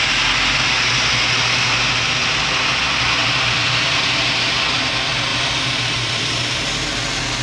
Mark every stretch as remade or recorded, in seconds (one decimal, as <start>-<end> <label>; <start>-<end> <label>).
0.0-3.2 recorded; 3.2-4.0 remade; 4.0-5.3 recorded; 5.3-6.6 remade; 6.6-7.4 recorded